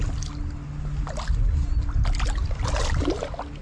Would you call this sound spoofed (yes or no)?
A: no